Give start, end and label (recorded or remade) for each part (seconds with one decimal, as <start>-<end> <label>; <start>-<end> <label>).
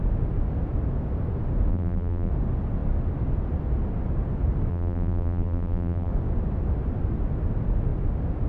0.0-1.7 recorded; 1.7-2.3 remade; 2.3-4.7 recorded; 4.7-6.1 remade; 6.1-8.5 recorded